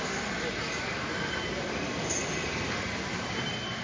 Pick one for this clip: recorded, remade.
recorded